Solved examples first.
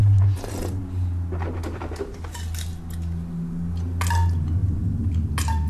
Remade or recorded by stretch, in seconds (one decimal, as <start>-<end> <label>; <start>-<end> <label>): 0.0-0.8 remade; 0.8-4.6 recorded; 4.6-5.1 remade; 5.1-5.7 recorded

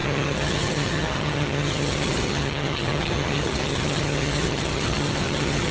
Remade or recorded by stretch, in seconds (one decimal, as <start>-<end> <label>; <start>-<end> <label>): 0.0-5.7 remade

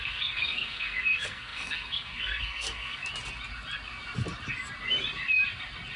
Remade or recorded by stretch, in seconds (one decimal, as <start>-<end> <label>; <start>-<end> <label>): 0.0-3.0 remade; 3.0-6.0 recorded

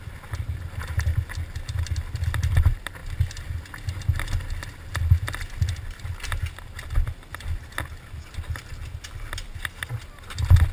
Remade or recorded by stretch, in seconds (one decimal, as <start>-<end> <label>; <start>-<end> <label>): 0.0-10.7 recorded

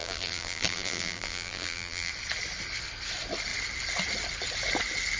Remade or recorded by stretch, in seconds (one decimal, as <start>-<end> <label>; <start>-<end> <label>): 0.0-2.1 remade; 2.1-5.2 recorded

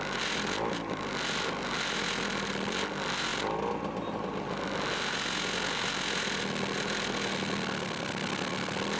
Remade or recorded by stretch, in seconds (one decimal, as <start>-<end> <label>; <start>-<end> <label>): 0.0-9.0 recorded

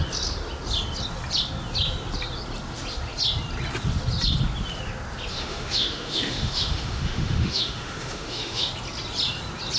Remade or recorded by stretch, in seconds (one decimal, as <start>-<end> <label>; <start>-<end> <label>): 0.0-5.3 recorded; 5.3-8.7 remade; 8.7-9.8 recorded

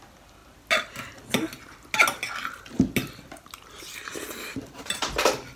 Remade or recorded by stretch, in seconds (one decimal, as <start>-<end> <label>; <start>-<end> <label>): 0.0-5.6 recorded